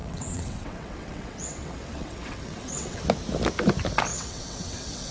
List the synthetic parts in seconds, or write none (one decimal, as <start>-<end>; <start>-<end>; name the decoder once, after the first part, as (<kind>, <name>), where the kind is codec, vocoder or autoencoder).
0.0-3.0 (vocoder, WaveNeXt); 4.1-5.1